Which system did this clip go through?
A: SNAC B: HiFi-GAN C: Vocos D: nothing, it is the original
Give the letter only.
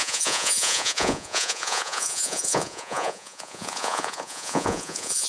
C